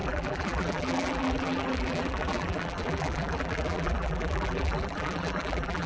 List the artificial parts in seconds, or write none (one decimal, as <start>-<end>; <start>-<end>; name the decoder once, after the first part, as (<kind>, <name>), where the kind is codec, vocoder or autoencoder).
0.0-5.9 (vocoder, BigVGAN v2)